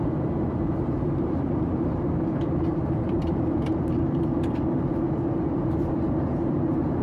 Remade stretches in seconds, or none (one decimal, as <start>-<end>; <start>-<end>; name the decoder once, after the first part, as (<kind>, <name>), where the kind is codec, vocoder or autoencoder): 0.0-7.0 (vocoder, BigVGAN v2)